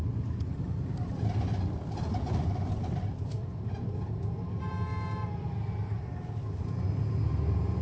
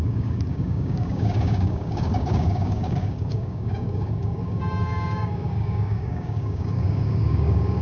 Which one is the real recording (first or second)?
first